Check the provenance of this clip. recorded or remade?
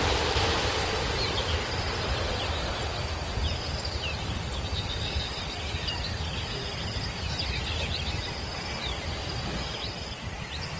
recorded